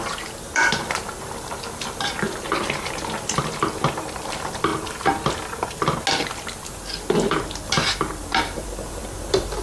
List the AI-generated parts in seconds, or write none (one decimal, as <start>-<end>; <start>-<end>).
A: 0.0-4.7; 7.6-9.6

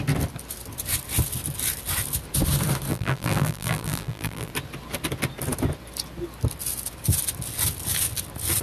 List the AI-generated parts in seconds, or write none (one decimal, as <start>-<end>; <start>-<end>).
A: 2.9-4.5

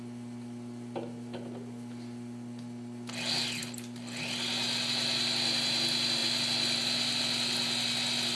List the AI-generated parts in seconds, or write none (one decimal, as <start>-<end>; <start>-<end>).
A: 3.6-4.2; 6.2-7.2

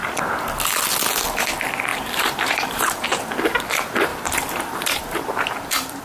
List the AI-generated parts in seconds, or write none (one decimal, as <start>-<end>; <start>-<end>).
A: 1.9-3.2; 4.1-6.0

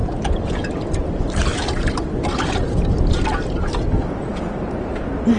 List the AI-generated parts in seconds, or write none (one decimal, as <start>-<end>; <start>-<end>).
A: 0.0-0.5; 4.3-4.8